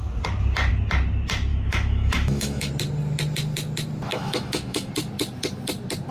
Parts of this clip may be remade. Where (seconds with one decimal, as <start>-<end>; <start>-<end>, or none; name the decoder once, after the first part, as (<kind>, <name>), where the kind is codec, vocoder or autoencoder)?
1.5-2.7 (autoencoder, DAC-VAE); 4.1-4.9